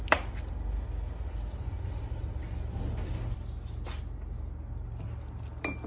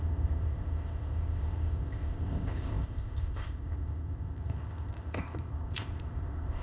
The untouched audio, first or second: first